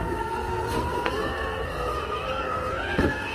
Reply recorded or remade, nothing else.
remade